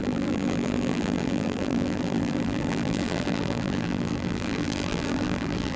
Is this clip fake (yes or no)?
yes